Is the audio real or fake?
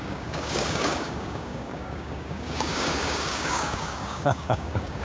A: fake